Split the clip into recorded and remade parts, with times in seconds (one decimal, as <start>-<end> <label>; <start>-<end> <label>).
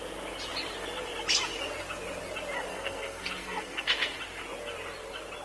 0.0-2.7 recorded; 2.7-4.2 remade; 4.2-5.4 recorded